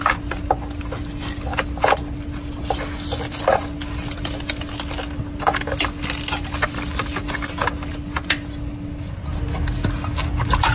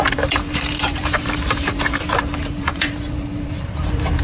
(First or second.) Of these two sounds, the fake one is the second